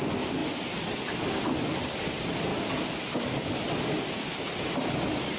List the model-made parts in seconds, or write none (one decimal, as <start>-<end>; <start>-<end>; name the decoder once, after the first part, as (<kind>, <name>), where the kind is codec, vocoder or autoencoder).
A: 0.0-0.4 (vocoder, BigVGAN v2); 1.2-2.5; 4.4-5.4